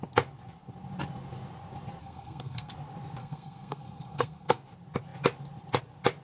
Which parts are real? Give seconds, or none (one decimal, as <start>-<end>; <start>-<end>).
0.0-2.0; 2.7-3.2; 4.6-6.2